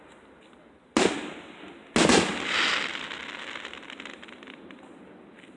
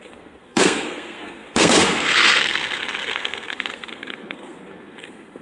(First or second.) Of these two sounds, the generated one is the second